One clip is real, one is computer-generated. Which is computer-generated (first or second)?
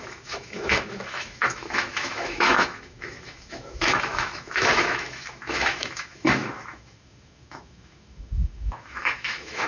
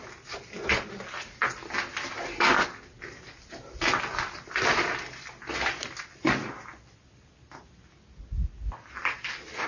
first